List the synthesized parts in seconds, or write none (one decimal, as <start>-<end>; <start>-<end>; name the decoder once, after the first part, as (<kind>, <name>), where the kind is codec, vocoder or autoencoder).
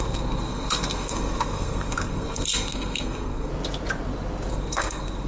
0.0-3.5 (codec, SNAC); 4.5-5.3